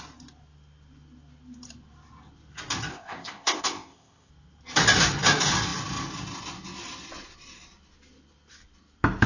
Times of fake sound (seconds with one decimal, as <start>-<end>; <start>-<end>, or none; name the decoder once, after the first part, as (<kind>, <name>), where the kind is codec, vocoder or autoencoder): 2.9-4.3 (codec, ZipCodec)